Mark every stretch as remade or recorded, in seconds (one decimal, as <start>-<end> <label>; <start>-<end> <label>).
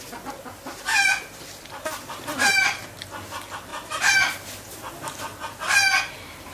0.0-3.7 recorded; 3.7-4.2 remade; 4.2-6.5 recorded